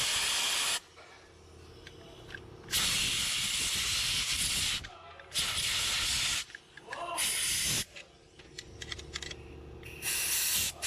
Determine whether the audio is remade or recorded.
recorded